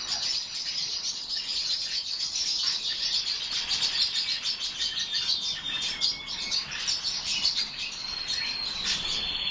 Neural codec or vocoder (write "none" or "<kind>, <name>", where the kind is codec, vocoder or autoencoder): none